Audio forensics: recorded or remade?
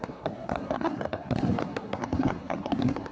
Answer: remade